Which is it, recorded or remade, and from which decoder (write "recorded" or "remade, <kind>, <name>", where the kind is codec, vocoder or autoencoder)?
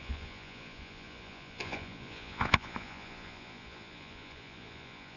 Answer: remade, vocoder, Vocos